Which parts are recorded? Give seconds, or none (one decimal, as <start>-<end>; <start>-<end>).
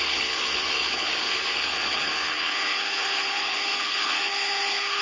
none